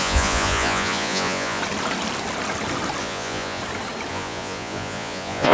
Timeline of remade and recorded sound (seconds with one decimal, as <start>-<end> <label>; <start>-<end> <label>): 0.0-1.6 remade; 1.6-3.0 recorded; 3.0-3.6 remade; 3.6-4.1 recorded; 4.1-5.5 remade